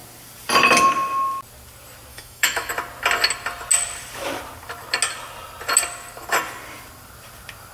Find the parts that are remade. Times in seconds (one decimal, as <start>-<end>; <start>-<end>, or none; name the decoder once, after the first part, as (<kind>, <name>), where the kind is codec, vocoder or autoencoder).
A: 2.1-2.7 (autoencoder, DAC-VAE)